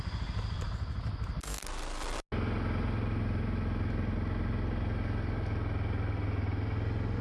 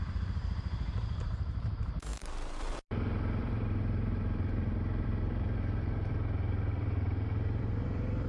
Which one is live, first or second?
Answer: first